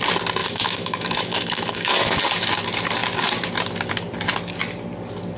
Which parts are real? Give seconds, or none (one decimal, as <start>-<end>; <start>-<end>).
0.0-0.4; 2.2-5.4